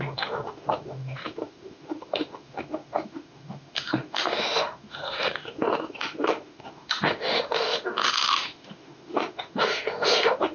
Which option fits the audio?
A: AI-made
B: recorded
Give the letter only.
A